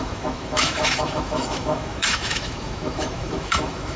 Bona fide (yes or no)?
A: no